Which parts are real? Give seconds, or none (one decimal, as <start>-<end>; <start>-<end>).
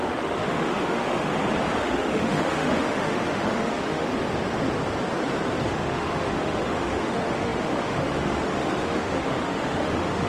1.3-1.8; 4.1-5.7